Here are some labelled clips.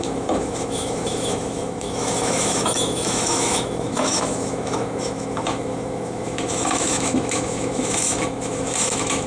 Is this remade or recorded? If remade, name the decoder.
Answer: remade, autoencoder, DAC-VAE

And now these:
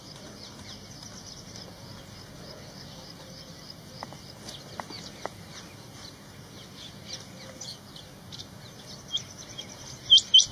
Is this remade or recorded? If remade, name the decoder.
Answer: remade, vocoder, BigVGAN v2